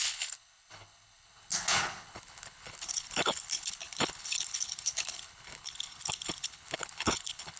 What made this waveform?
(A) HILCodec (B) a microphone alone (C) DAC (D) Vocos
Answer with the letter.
A